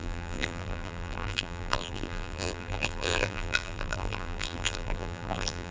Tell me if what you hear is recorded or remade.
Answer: remade